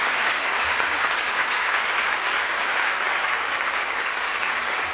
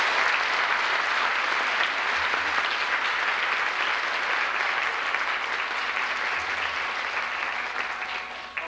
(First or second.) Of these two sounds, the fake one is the first